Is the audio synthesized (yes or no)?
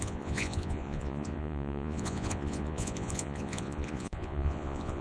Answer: yes